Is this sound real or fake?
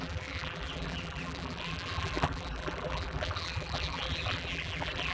fake